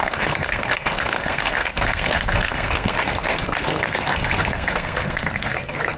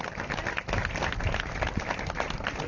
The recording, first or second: second